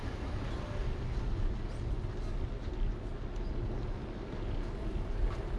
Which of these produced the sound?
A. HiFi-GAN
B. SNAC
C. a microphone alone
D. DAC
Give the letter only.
C